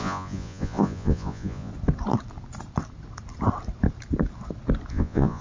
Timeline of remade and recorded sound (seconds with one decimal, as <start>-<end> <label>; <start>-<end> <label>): 0.0-1.7 remade; 1.7-4.9 recorded; 4.9-5.4 remade